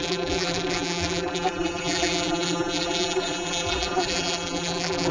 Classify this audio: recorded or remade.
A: remade